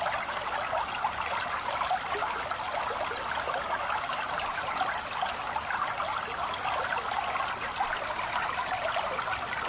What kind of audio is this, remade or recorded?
recorded